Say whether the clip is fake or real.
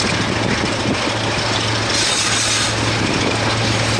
real